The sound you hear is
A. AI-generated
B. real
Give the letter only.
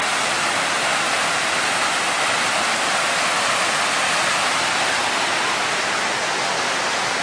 B